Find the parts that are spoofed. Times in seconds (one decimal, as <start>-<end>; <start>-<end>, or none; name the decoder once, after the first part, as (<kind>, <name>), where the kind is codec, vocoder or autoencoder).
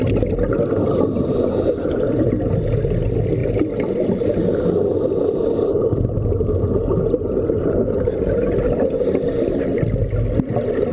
none